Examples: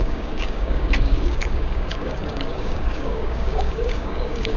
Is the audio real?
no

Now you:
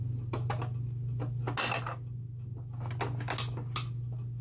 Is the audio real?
yes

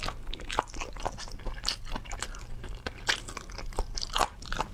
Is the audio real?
yes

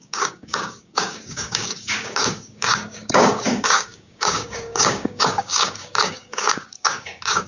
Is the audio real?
no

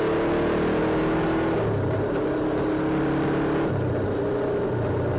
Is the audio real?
yes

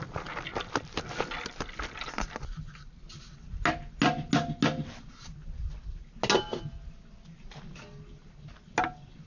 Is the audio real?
yes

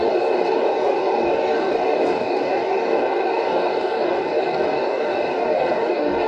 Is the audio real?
no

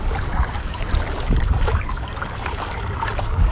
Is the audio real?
no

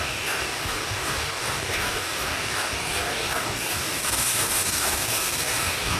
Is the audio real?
no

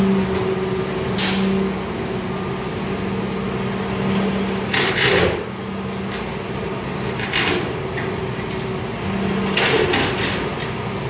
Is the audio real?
yes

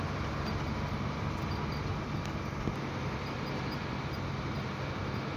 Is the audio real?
yes